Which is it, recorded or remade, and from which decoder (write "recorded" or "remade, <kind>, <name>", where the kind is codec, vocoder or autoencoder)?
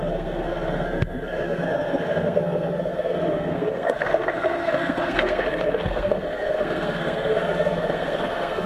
remade, codec, SNAC